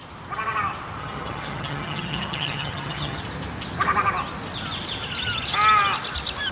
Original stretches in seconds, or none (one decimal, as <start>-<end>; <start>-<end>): 0.0-1.0; 3.2-6.5